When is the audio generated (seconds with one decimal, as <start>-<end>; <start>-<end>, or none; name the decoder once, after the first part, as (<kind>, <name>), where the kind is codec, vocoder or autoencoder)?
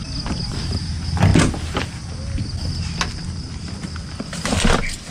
none